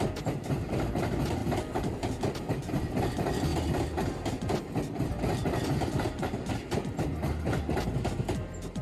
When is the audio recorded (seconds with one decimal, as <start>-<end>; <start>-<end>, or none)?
0.0-8.8